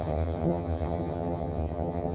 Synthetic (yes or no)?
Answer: yes